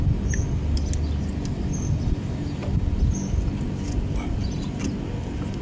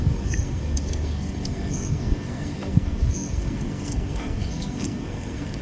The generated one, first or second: second